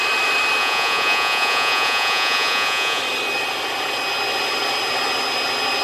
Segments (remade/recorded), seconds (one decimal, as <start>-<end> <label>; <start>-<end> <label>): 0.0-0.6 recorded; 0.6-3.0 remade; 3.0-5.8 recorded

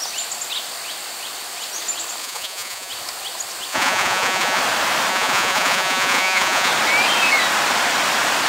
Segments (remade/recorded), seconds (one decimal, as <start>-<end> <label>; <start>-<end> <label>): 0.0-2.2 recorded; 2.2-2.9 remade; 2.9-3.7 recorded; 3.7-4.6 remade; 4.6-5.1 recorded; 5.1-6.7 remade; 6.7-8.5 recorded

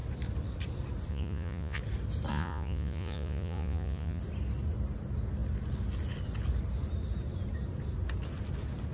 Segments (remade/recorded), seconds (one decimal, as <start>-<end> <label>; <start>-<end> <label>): 0.0-1.1 recorded; 1.1-1.8 remade; 1.8-2.3 recorded; 2.3-4.2 remade; 4.2-8.9 recorded

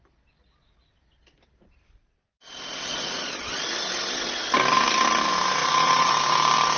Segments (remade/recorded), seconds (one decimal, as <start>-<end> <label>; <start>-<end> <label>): 0.0-2.9 recorded; 2.9-3.6 remade; 3.6-5.6 recorded; 5.6-6.1 remade; 6.1-6.8 recorded

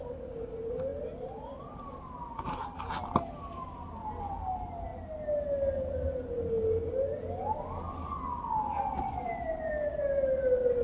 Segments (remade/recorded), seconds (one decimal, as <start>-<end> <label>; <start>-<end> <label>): 0.0-10.8 recorded

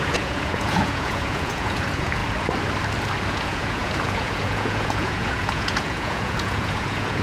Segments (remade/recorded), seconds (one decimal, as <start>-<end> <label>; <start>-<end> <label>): 0.0-2.2 remade; 2.2-3.3 recorded; 3.3-7.2 remade